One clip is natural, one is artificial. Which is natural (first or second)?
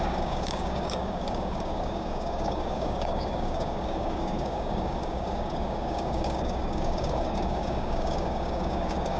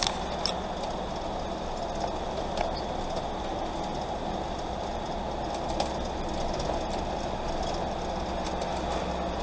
second